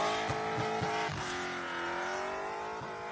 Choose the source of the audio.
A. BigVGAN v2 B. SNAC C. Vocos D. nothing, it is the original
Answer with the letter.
D